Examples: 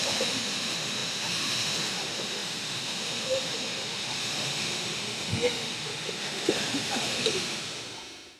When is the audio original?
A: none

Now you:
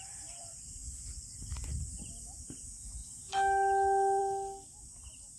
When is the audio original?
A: 0.0-5.4

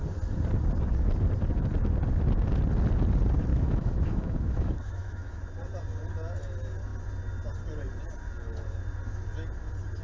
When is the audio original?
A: 0.0-3.5; 5.4-10.0

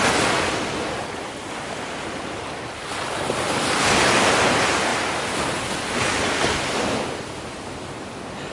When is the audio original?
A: 0.0-8.5

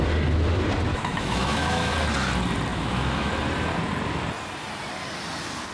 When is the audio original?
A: 0.0-0.9; 1.9-2.7; 3.3-5.7